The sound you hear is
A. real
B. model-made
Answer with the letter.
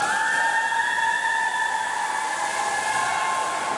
A